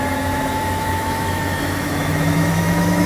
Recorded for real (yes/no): no